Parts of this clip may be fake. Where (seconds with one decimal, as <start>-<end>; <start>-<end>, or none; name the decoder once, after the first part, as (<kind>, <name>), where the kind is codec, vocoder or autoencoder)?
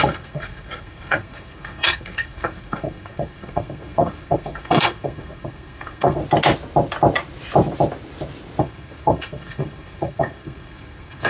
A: 0.0-6.2 (codec, SNAC); 8.6-11.3